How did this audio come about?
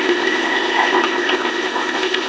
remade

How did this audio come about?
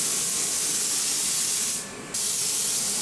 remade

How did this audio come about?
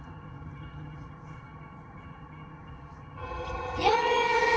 remade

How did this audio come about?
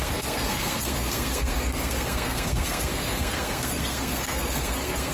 remade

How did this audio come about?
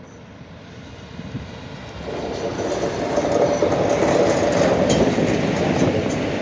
recorded